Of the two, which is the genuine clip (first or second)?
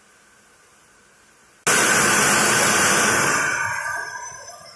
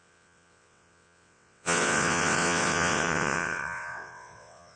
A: first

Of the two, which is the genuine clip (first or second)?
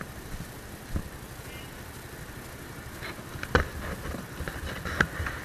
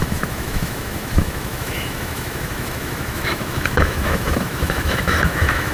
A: first